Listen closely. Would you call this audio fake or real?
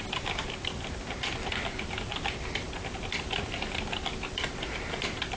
real